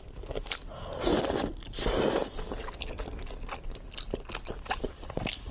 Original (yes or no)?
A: yes